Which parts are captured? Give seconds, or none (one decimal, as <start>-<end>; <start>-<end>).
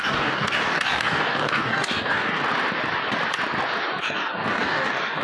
2.4-4.0